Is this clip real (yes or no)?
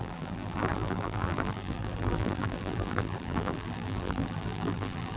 no